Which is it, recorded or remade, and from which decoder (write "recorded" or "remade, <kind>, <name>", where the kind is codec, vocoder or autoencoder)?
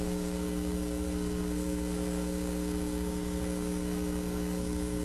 remade, codec, SNAC